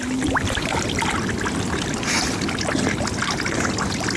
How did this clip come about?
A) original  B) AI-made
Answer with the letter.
A